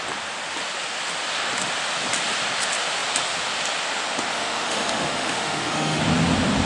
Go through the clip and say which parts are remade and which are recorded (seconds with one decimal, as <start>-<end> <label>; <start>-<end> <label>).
0.0-4.3 recorded; 4.3-6.0 remade; 6.0-6.7 recorded